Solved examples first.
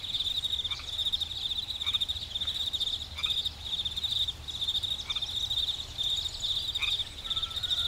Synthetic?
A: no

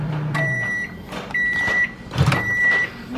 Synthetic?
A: yes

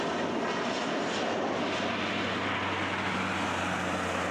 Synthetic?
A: no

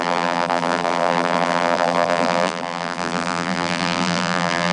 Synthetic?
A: yes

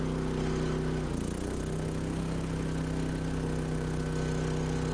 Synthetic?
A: no